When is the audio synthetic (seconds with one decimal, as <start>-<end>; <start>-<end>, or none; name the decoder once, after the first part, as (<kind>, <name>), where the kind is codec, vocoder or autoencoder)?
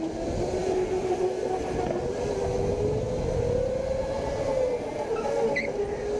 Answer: none